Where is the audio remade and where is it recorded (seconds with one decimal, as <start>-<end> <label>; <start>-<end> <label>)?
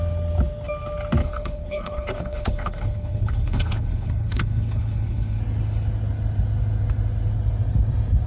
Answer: 0.0-1.2 recorded; 1.2-5.4 remade; 5.4-8.3 recorded